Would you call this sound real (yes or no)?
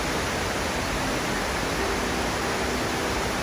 yes